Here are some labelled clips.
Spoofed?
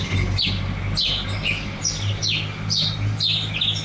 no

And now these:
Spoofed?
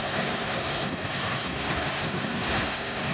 yes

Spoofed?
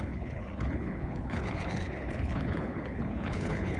yes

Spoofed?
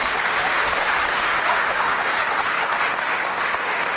yes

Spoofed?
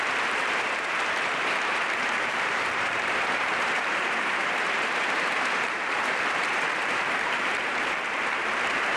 yes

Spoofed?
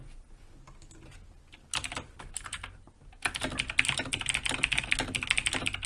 no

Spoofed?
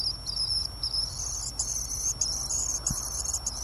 no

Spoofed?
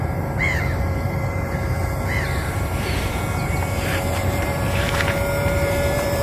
yes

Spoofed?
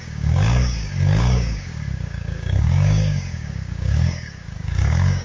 yes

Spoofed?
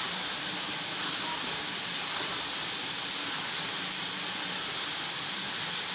yes